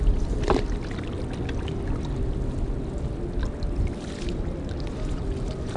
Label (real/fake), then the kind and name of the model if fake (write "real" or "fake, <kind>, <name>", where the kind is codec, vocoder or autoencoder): real